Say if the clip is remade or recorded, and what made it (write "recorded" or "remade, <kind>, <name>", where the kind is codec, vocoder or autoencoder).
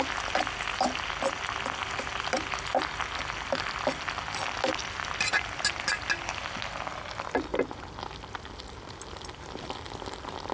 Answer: recorded